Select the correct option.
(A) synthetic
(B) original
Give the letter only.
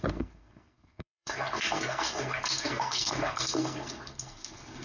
A